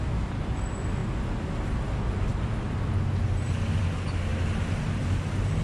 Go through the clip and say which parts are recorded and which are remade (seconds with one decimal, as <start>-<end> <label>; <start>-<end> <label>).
0.0-5.6 recorded